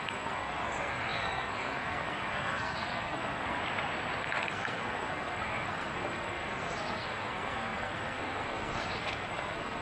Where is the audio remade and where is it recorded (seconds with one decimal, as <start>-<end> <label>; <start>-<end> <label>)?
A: 0.0-3.6 remade; 3.6-4.2 recorded; 4.2-9.8 remade